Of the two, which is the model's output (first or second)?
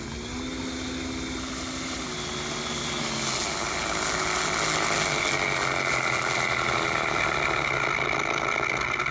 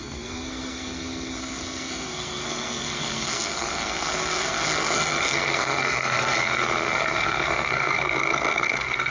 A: second